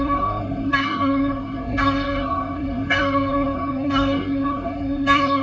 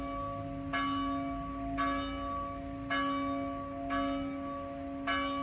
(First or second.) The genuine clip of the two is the second